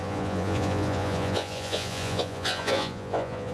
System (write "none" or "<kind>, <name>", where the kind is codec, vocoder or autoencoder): vocoder, Vocos